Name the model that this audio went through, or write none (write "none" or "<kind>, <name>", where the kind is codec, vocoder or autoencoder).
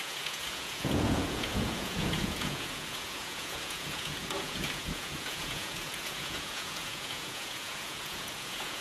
vocoder, Vocos